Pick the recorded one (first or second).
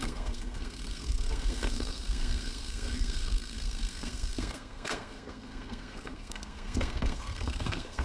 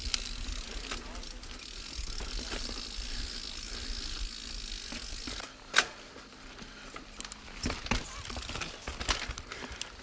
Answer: second